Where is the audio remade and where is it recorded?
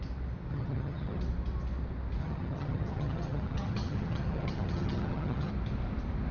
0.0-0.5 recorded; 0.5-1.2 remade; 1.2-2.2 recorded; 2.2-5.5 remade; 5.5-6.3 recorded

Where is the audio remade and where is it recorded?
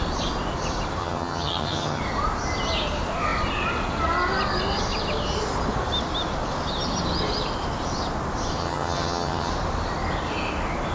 0.0-1.0 recorded; 1.0-2.0 remade; 2.0-8.6 recorded; 8.6-9.5 remade; 9.5-10.9 recorded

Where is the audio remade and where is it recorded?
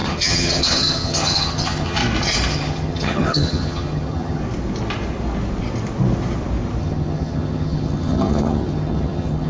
0.0-2.0 remade; 2.0-2.5 recorded; 2.5-4.4 remade; 4.4-6.8 recorded; 6.8-9.5 remade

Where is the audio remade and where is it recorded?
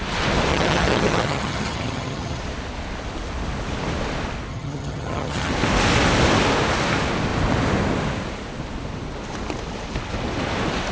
0.0-0.5 recorded; 0.5-2.4 remade; 2.4-4.5 recorded; 4.5-5.5 remade; 5.5-10.9 recorded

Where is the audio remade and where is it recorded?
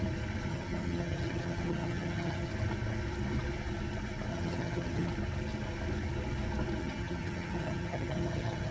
0.0-0.5 recorded; 0.5-2.5 remade; 2.5-4.3 recorded; 4.3-5.1 remade; 5.1-6.8 recorded; 6.8-8.7 remade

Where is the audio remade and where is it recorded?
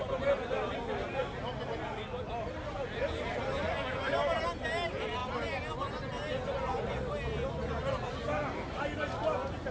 0.0-9.7 recorded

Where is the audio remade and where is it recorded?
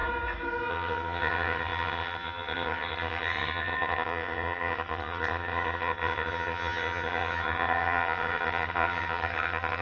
0.0-0.7 recorded; 0.7-9.8 remade